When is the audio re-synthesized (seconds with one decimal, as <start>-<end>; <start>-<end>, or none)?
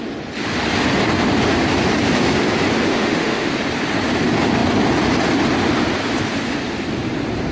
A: 2.9-3.5